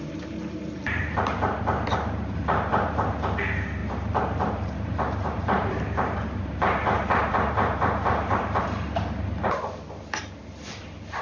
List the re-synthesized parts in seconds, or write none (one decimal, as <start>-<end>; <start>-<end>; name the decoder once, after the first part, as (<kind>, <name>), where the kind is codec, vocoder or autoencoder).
0.8-3.1 (vocoder, BigVGAN v2); 3.8-8.6